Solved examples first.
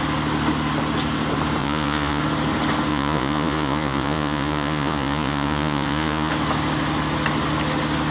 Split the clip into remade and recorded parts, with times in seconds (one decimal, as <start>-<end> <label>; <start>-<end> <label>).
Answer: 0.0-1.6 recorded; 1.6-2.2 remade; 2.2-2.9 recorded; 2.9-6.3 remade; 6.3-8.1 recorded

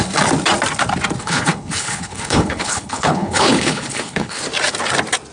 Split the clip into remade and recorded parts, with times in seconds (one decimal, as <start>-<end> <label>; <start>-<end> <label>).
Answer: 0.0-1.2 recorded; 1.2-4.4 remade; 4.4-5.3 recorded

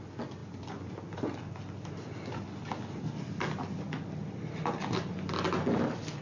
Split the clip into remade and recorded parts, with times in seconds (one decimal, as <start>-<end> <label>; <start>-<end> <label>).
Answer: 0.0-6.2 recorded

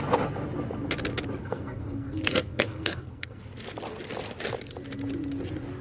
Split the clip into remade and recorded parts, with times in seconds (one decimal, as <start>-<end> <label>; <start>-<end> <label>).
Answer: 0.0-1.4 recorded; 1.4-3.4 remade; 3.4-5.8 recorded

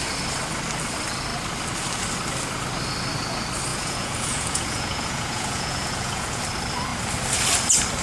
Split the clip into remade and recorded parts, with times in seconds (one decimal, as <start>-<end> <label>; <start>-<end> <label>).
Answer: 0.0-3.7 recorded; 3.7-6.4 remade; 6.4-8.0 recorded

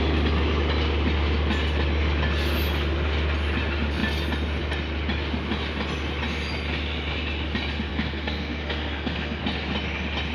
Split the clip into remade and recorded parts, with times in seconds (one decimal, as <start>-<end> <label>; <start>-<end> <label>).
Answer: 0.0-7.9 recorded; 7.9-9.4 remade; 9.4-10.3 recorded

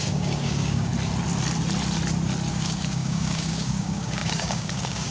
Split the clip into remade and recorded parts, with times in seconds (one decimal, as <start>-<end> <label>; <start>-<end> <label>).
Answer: 0.0-0.9 remade; 0.9-2.5 recorded; 2.5-5.1 remade

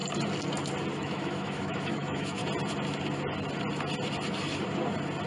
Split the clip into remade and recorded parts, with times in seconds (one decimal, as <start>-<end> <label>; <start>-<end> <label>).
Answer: 0.0-1.0 recorded; 1.0-2.4 remade; 2.4-5.3 recorded